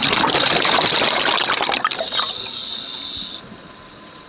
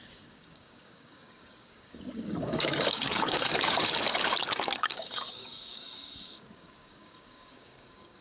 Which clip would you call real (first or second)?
first